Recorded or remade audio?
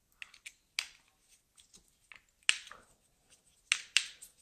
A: recorded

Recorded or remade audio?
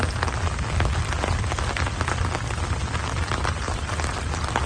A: recorded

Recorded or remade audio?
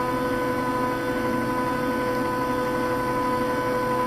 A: recorded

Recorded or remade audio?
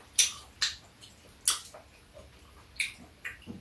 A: recorded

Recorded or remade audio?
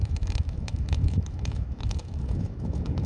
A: remade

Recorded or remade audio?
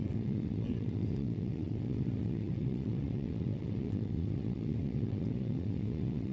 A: remade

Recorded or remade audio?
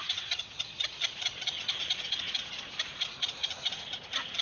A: remade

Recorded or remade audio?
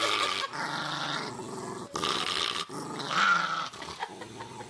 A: recorded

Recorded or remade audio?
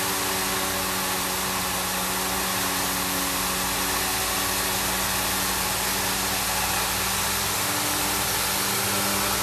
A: recorded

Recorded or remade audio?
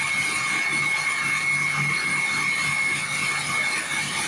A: recorded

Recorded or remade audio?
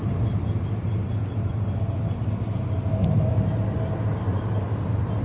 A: recorded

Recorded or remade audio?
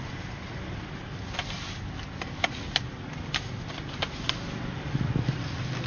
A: recorded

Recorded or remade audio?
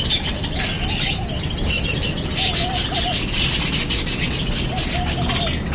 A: recorded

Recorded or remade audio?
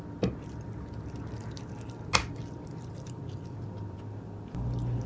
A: recorded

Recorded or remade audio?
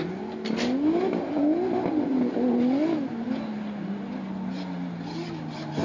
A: recorded